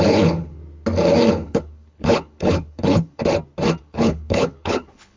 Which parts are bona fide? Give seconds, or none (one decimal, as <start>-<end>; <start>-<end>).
0.6-1.3; 3.2-3.8